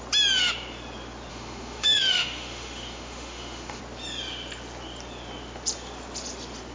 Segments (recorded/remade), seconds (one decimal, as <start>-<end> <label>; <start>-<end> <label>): 0.0-1.3 recorded; 1.3-3.8 remade; 3.8-6.7 recorded